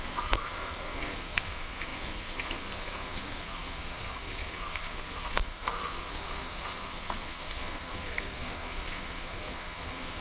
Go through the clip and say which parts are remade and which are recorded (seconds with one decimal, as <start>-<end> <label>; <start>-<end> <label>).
0.0-10.2 remade